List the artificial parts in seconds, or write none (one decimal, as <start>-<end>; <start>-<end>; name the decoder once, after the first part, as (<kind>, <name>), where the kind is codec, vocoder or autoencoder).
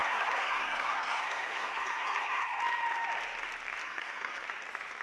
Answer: 0.0-2.6 (codec, SNAC); 3.8-4.4